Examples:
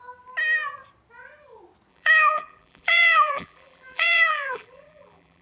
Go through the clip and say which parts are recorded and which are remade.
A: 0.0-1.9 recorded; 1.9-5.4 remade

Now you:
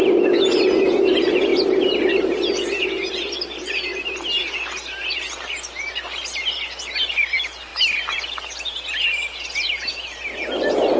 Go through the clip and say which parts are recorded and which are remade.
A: 0.0-11.0 recorded

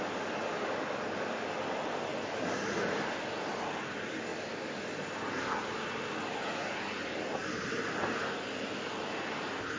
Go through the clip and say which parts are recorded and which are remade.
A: 0.0-9.8 recorded

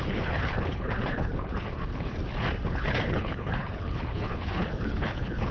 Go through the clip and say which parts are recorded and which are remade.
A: 0.0-2.2 remade; 2.2-2.7 recorded; 2.7-5.5 remade

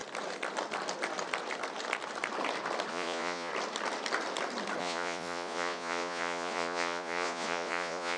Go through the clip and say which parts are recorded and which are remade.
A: 0.0-2.9 recorded; 2.9-3.5 remade; 3.5-4.8 recorded; 4.8-8.2 remade

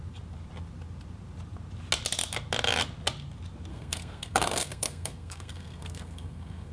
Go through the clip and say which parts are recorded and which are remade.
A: 0.0-3.7 recorded; 3.7-6.7 remade

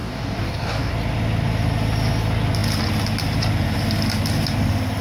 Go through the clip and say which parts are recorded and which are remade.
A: 0.0-0.9 remade; 0.9-5.0 recorded

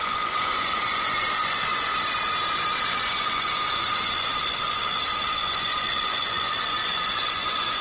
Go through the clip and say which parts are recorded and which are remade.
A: 0.0-1.9 remade; 1.9-2.7 recorded; 2.7-7.8 remade